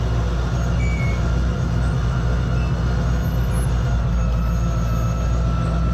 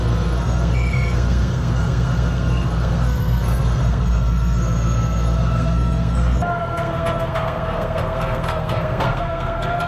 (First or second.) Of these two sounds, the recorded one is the first